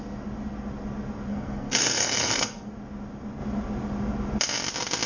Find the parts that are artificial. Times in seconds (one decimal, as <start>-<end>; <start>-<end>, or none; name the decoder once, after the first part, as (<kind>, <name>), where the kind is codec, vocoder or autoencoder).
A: 1.3-2.7 (codec, SNAC)